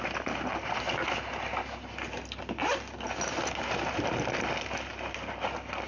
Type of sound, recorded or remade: recorded